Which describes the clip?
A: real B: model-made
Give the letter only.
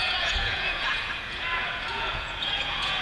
B